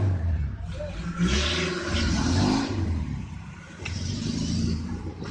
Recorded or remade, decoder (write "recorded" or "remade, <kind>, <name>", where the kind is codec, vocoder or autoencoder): remade, vocoder, BigVGAN v2